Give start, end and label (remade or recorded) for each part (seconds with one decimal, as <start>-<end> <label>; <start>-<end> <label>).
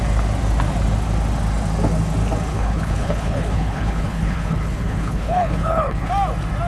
0.0-2.5 recorded; 2.5-6.1 remade; 6.1-6.7 recorded